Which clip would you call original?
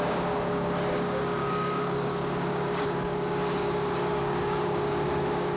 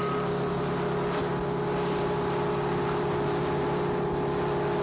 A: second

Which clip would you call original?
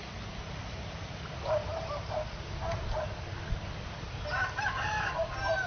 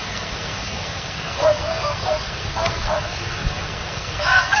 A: first